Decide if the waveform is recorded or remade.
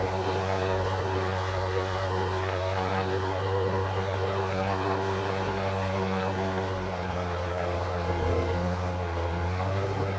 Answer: remade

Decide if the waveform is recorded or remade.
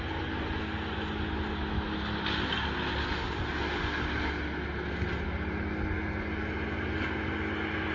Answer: recorded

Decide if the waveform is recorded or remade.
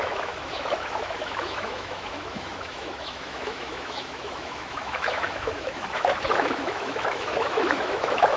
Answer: remade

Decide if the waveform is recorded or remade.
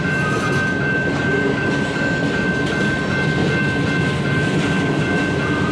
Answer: recorded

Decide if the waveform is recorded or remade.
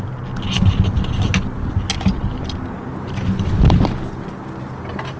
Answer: recorded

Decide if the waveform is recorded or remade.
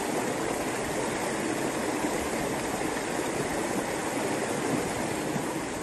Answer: recorded